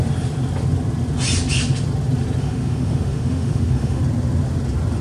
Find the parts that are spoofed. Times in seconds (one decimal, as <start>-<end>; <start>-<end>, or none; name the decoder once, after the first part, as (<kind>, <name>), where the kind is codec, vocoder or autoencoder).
2.4-4.0 (autoencoder, DAC-VAE)